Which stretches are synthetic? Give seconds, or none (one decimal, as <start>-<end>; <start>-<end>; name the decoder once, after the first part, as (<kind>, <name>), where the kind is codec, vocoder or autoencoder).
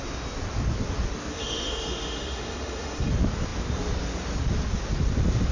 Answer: 1.3-3.1 (autoencoder, DAC-VAE)